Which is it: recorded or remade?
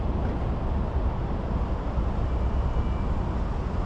recorded